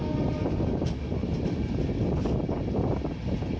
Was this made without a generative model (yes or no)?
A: yes